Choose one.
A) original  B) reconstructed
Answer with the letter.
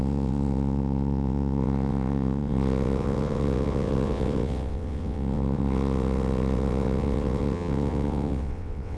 B